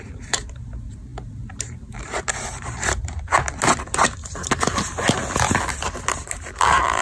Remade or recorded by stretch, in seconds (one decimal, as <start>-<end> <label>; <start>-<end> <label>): 0.0-3.3 remade; 3.3-6.1 recorded; 6.1-7.0 remade